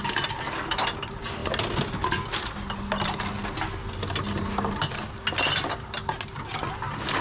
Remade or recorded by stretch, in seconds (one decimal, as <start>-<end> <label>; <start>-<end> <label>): 0.0-7.2 recorded